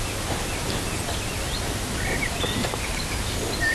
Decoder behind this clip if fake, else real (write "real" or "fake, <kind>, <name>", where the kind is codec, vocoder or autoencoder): real